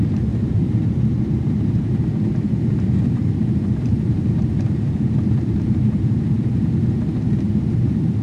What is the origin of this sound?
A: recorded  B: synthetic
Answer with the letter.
B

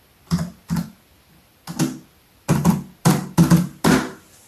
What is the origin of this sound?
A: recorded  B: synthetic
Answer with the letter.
A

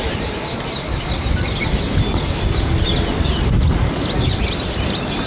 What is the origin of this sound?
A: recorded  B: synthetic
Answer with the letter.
A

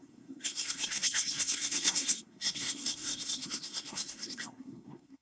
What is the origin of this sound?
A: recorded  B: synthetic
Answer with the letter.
B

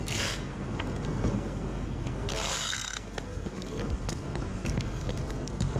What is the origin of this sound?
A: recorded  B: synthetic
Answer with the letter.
B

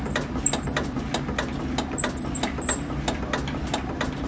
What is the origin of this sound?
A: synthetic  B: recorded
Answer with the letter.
B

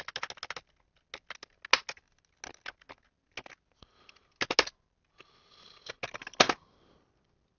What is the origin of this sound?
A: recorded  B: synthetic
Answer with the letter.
A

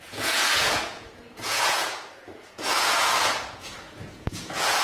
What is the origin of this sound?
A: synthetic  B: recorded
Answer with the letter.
A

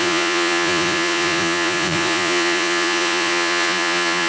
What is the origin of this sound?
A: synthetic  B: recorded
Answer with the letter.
A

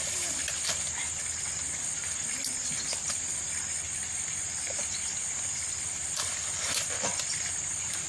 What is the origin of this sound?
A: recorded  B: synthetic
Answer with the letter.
A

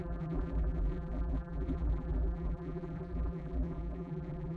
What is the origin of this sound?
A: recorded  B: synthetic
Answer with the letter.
B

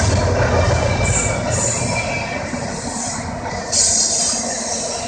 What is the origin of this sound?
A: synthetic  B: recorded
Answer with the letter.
B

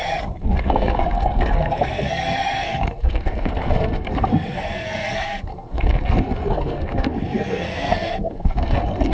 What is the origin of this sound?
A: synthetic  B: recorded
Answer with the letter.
A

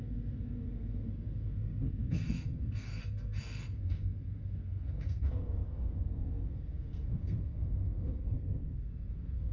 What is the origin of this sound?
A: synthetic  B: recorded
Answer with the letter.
A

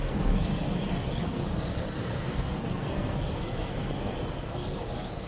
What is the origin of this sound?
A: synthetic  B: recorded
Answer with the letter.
A